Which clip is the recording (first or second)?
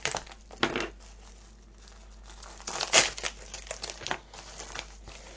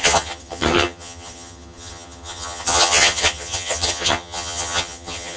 first